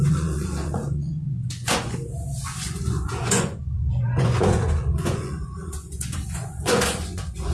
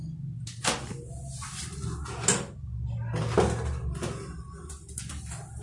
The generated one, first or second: first